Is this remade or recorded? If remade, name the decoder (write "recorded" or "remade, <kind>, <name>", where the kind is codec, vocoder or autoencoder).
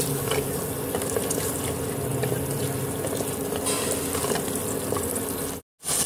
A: recorded